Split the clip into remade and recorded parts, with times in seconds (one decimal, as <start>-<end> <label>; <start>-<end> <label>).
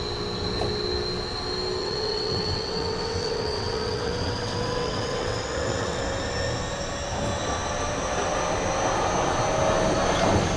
0.0-1.8 recorded; 1.8-6.0 remade; 6.0-10.6 recorded